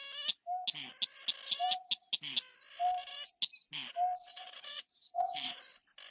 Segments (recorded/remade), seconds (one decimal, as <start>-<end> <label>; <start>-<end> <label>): 0.0-4.3 recorded; 4.3-5.6 remade; 5.6-6.1 recorded